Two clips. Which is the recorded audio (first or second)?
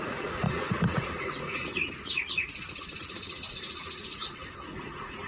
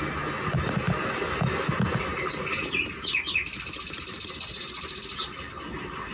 second